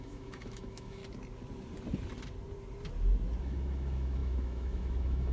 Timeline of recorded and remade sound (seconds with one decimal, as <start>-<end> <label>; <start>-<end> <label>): 0.0-1.0 remade; 1.0-3.4 recorded; 3.4-5.3 remade